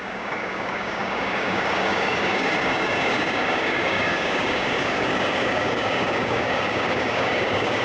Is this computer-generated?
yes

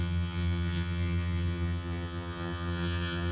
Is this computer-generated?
yes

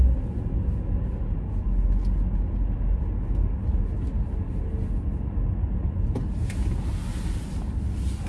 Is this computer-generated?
no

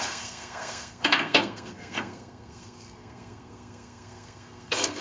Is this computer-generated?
yes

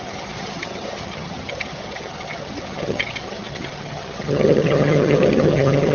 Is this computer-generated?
yes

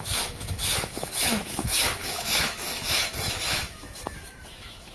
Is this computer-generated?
yes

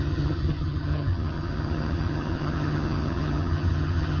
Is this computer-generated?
yes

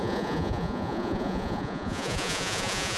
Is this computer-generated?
yes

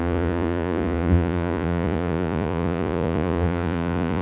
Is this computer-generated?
yes